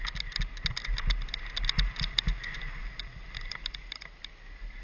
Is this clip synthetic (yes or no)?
no